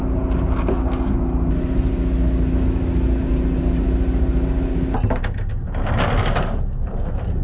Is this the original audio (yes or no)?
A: yes